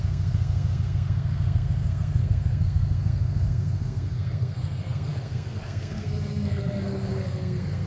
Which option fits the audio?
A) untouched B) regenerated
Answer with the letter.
B